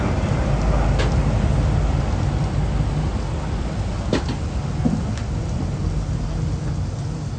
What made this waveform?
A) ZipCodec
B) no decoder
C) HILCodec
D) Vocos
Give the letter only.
B